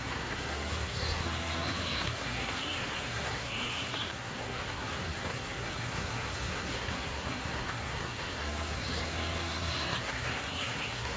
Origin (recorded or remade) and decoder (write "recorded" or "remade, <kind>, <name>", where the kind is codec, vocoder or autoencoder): remade, codec, SNAC